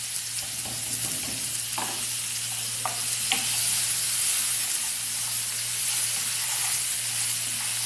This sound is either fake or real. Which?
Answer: real